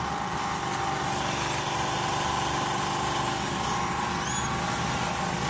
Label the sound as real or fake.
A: real